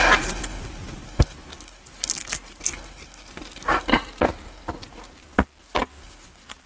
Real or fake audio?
real